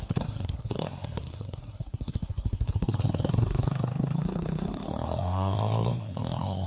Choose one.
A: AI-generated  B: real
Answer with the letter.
A